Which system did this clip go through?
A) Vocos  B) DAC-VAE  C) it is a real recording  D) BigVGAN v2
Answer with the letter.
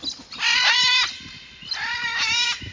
C